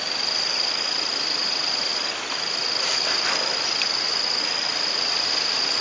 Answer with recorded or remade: recorded